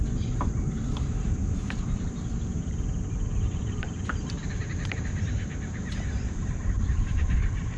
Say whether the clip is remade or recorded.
remade